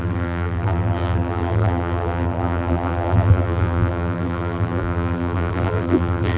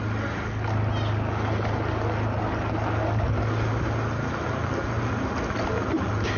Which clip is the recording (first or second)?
second